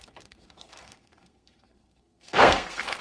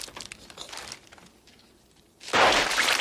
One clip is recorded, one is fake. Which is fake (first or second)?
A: first